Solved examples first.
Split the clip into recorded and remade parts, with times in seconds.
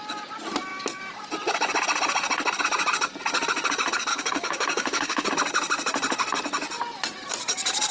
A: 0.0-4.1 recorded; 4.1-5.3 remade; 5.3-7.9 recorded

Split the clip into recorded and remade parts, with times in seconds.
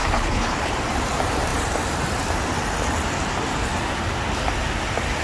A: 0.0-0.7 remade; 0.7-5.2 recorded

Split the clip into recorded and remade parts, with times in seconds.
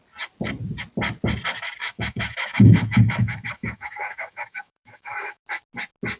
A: 0.0-1.8 recorded; 1.8-5.4 remade; 5.4-6.2 recorded